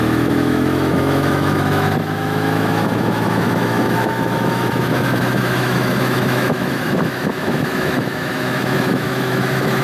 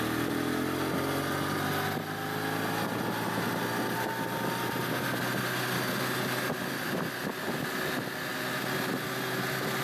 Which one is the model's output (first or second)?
first